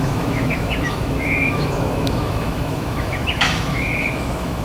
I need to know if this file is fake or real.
fake